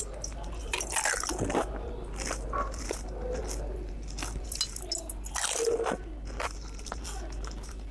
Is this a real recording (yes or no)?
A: yes